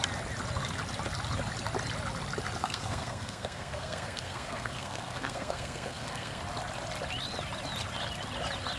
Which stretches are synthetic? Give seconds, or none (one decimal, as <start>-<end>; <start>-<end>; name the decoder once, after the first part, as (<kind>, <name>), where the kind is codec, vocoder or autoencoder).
2.6-6.4 (codec, SNAC)